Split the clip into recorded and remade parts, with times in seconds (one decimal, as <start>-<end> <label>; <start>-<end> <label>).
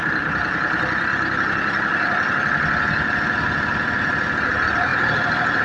0.0-5.6 remade